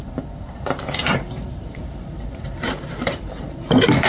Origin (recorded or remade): remade